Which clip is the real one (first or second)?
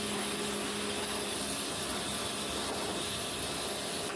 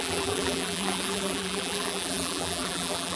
first